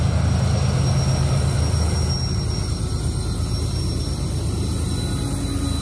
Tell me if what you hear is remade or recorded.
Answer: recorded